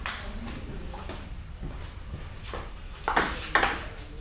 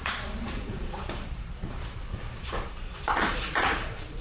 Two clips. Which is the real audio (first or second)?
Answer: first